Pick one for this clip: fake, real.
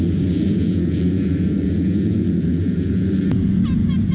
fake